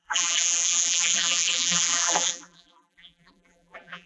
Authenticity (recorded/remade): remade